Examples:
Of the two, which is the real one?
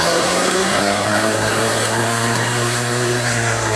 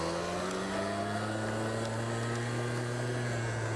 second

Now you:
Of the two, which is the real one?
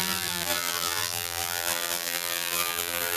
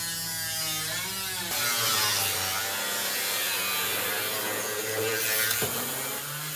second